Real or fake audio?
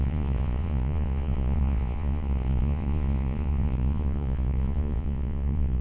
fake